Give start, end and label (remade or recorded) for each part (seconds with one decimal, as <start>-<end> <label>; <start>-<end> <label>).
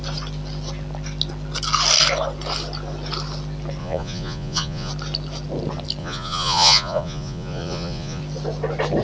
0.0-3.8 recorded; 3.8-4.9 remade; 4.9-6.0 recorded; 6.0-8.2 remade; 8.2-9.0 recorded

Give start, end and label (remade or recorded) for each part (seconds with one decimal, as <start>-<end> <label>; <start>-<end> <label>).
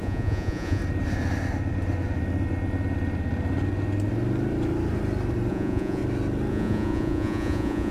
0.0-0.8 remade; 0.8-5.5 recorded; 5.5-6.0 remade; 6.0-6.5 recorded; 6.5-7.9 remade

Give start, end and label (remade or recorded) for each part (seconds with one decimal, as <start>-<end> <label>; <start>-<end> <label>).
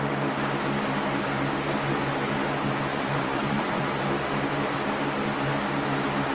0.0-2.9 recorded; 2.9-4.0 remade; 4.0-6.3 recorded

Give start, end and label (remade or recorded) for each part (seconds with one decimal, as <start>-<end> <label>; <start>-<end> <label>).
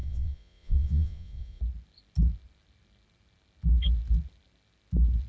0.0-1.6 remade; 1.6-5.3 recorded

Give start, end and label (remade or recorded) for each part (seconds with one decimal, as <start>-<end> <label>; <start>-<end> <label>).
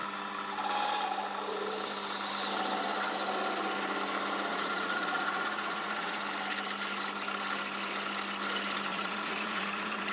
0.0-4.5 recorded; 4.5-6.2 remade; 6.2-8.9 recorded; 8.9-10.1 remade